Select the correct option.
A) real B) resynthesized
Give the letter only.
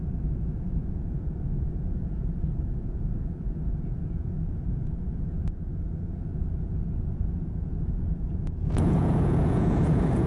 B